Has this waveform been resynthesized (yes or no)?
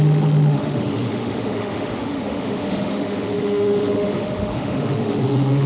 yes